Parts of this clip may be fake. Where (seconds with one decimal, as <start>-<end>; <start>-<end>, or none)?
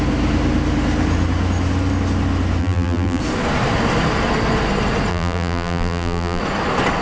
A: 2.6-3.2; 5.1-6.4